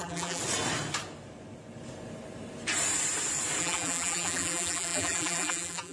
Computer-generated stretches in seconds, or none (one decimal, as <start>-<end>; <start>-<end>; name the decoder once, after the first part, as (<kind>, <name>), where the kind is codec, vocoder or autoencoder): 0.0-0.4 (vocoder, BigVGAN v2); 3.6-5.9